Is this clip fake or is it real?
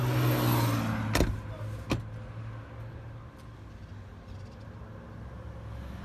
real